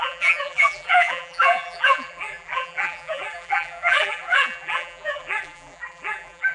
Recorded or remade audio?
remade